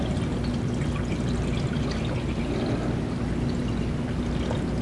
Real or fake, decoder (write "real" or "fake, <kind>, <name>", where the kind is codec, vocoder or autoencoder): real